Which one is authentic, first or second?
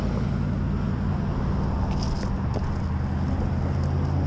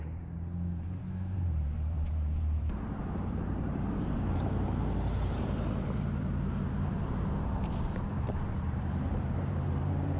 first